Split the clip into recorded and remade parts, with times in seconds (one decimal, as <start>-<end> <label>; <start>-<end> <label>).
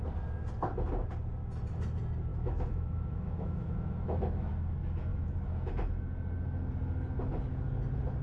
0.0-2.3 recorded; 2.3-4.5 remade; 4.5-5.1 recorded; 5.1-5.7 remade; 5.7-8.2 recorded